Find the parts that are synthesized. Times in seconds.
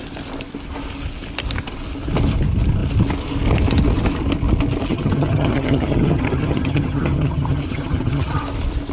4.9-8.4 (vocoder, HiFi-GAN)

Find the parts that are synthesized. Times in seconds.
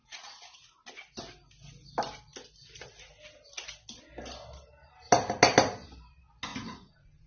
0.0-0.7 (vocoder, Vocos); 6.5-7.3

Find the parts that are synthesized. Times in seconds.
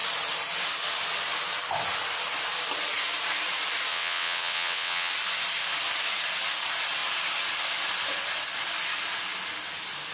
3.9-5.1 (vocoder, WaveNeXt)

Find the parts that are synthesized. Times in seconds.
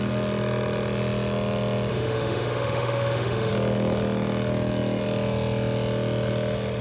1.9-3.5 (autoencoder, DAC-VAE)